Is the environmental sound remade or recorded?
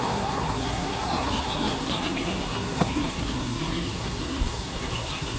remade